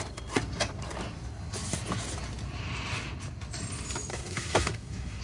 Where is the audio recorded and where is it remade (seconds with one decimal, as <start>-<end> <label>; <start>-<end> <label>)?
0.0-4.1 recorded; 4.1-5.2 remade